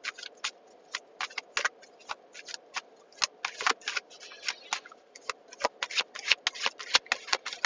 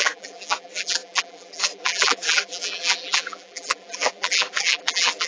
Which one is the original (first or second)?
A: first